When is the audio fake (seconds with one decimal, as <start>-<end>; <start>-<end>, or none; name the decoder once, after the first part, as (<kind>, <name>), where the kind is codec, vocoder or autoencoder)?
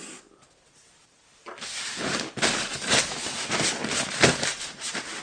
4.5-5.2 (vocoder, BigVGAN v2)